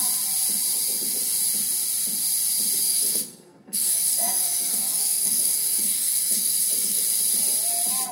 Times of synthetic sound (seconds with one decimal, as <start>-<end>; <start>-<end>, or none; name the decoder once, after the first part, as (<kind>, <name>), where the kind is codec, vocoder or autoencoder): 2.9-7.0 (codec, SNAC)